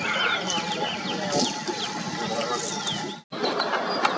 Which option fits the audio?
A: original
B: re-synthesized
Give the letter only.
A